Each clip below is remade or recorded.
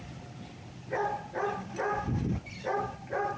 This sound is recorded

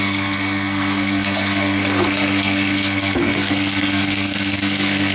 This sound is remade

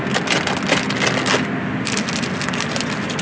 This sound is recorded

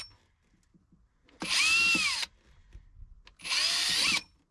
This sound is recorded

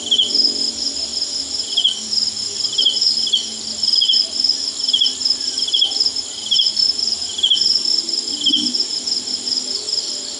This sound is recorded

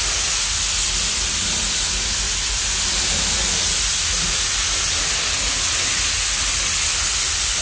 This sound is recorded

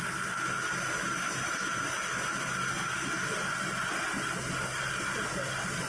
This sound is recorded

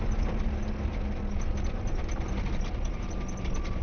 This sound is recorded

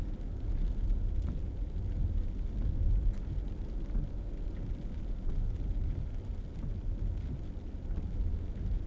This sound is recorded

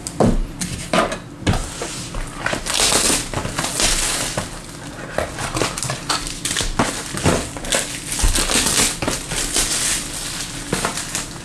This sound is recorded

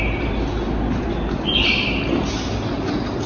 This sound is recorded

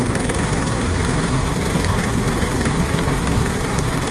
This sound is remade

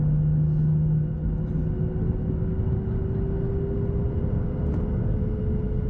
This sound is recorded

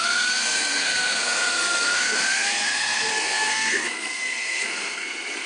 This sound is remade